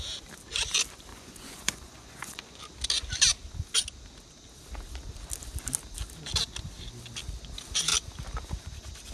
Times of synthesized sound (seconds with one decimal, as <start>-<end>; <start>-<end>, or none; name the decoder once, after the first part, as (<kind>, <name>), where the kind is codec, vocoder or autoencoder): 1.1-2.6 (vocoder, Vocos)